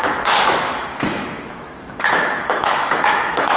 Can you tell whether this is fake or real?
fake